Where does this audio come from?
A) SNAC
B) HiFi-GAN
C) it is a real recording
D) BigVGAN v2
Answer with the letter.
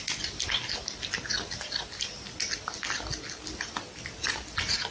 C